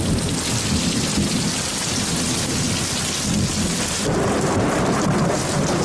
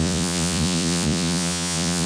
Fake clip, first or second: second